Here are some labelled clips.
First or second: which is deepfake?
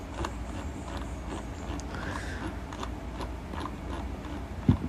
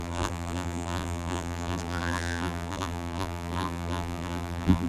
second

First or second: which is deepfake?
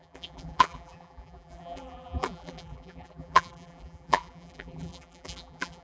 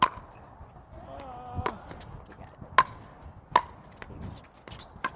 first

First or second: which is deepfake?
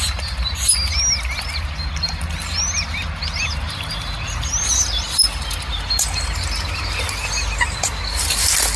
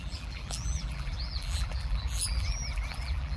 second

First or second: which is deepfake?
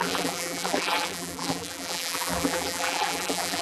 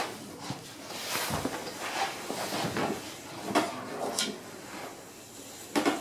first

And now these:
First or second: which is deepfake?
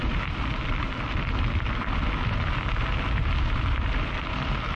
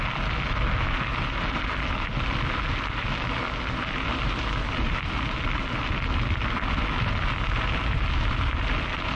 first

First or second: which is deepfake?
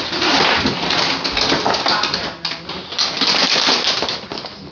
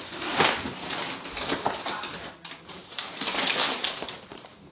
second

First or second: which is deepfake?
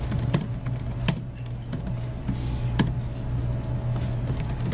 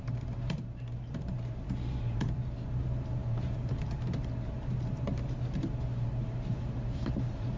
second